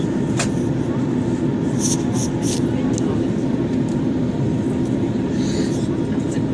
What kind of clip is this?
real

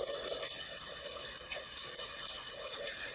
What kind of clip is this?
real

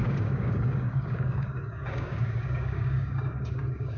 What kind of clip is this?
fake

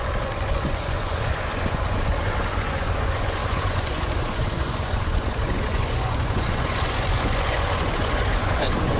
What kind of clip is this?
fake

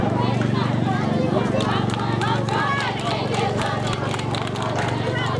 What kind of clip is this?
real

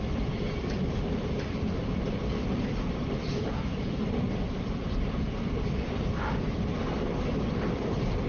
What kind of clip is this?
fake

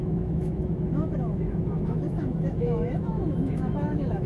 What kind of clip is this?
fake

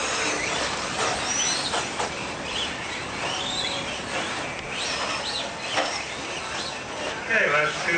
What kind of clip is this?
real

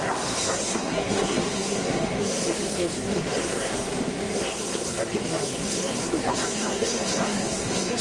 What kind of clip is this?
fake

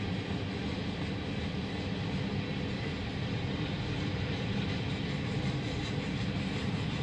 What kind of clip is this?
real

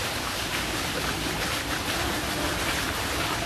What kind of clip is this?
fake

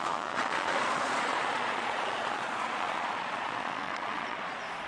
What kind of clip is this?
fake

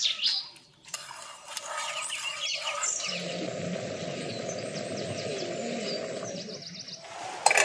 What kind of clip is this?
real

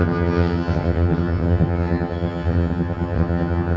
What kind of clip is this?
fake